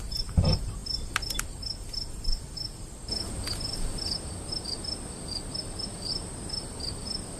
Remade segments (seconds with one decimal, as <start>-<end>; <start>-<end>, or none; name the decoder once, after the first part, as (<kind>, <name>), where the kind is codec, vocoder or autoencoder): none